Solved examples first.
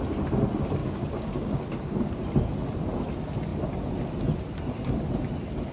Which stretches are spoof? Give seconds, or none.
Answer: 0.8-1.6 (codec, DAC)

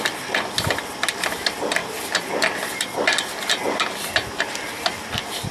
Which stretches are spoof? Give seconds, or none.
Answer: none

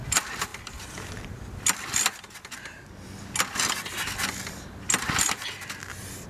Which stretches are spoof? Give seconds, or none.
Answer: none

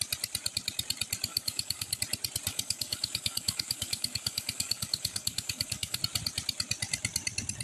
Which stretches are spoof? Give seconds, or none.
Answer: 1.3-2.0 (codec, DAC); 2.5-6.0

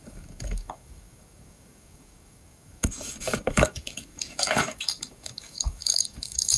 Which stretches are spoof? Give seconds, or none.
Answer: 0.0-6.6 (codec, DAC)